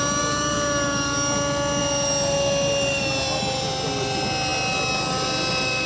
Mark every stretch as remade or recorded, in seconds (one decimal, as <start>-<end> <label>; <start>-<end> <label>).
0.0-5.9 recorded